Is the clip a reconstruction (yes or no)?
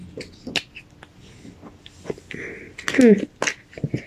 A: no